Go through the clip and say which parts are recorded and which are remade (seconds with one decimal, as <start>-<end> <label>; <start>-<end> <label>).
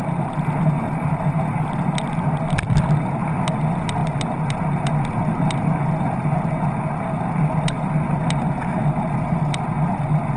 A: 0.0-10.4 recorded